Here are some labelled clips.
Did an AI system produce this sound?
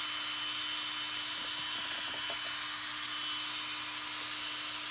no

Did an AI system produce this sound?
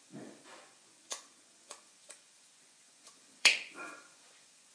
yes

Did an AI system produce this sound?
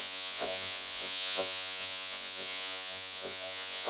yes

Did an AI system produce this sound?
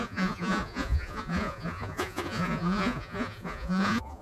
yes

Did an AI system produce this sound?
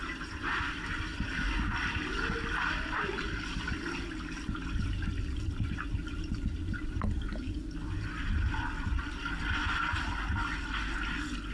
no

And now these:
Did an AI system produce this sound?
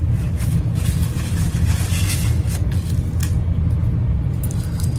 no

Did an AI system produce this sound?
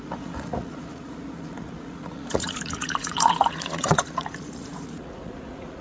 yes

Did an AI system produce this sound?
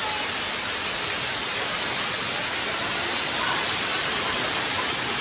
no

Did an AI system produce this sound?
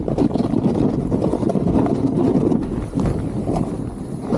no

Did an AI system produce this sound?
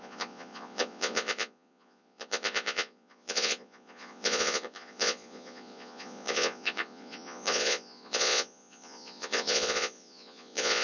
yes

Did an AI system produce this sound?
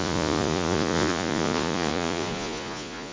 yes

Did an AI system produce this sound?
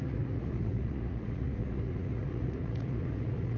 yes